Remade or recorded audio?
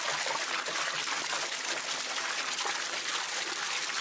recorded